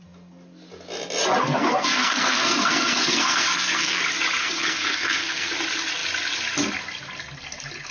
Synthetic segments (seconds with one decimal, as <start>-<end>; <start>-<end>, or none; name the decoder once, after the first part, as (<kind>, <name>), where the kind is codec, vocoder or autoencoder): 1.4-4.0 (codec, SNAC); 4.4-5.5